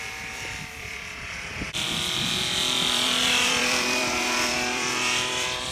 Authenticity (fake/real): fake